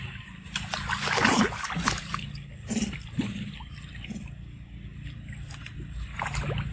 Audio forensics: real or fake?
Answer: real